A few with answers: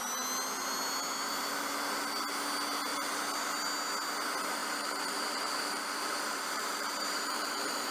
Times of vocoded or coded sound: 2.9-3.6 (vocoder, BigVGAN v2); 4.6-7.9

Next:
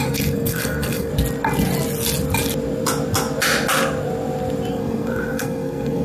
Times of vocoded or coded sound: 0.0-1.1 (codec, SNAC); 4.7-6.0

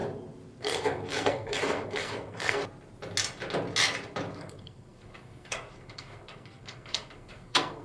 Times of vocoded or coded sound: 0.6-2.6 (codec, SNAC); 4.3-7.8

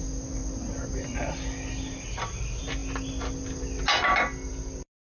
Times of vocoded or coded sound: none

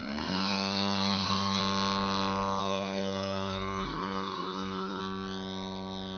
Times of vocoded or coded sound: 0.0-1.6 (codec, SNAC); 2.6-5.0

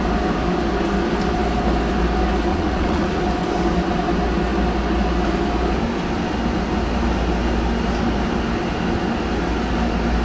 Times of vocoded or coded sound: 2.5-3.2 (vocoder, Vocos)

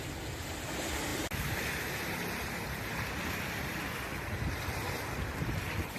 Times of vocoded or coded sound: none